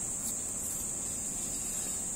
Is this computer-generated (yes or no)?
no